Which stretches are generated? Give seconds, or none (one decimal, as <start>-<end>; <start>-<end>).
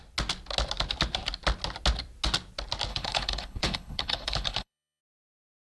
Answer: 2.9-5.0